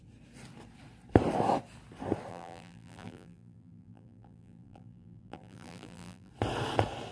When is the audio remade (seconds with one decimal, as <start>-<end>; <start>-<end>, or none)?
2.3-6.3